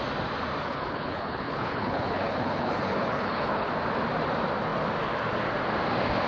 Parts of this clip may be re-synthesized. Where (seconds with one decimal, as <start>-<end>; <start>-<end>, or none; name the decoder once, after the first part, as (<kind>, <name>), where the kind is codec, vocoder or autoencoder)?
0.6-3.7 (codec, HILCodec)